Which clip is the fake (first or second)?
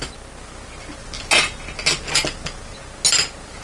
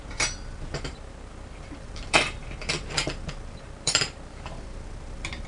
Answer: second